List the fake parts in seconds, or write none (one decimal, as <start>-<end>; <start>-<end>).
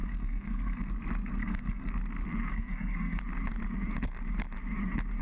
0.0-0.9; 1.4-1.9; 2.5-3.2